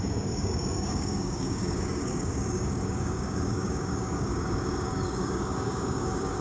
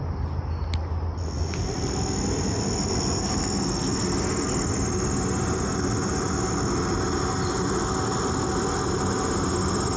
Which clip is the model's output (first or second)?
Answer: first